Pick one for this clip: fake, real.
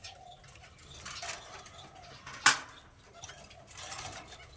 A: real